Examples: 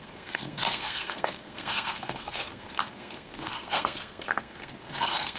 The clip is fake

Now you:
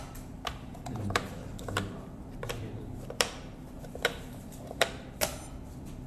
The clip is fake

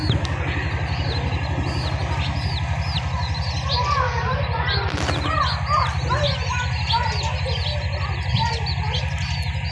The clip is real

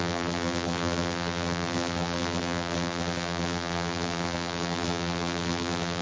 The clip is fake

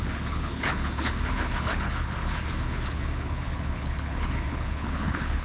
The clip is fake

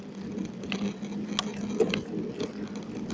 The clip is real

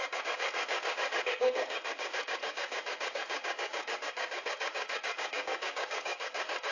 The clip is fake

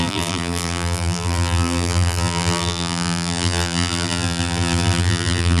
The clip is fake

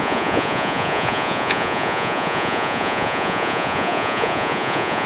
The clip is fake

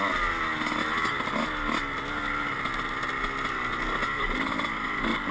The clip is real